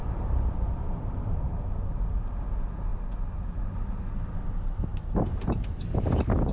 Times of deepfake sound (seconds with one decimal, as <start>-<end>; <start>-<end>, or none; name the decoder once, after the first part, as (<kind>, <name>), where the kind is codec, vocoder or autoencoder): 0.0-2.3 (vocoder, BigVGAN v2)